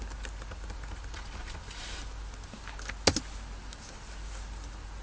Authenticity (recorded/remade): recorded